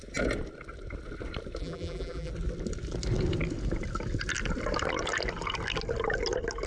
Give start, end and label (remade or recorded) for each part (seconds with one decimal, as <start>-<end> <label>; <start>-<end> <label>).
0.0-1.6 recorded; 1.6-2.3 remade; 2.3-6.7 recorded